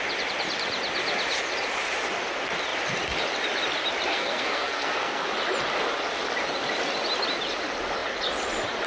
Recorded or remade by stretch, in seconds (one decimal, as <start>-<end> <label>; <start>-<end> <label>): 0.0-4.1 recorded; 4.1-5.3 remade; 5.3-8.9 recorded